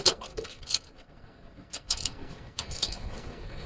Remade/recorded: remade